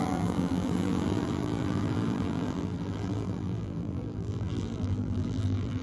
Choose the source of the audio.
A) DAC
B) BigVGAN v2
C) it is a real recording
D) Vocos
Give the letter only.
B